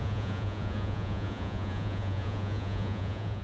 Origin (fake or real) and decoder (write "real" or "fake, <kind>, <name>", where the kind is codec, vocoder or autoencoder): fake, vocoder, Vocos